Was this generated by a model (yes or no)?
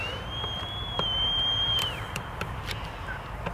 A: yes